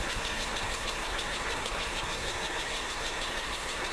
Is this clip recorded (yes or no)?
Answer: no